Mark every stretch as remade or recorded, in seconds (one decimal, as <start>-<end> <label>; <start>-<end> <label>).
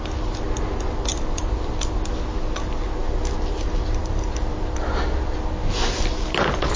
0.0-1.1 recorded; 1.1-1.9 remade; 1.9-4.0 recorded; 4.0-4.9 remade; 4.9-6.8 recorded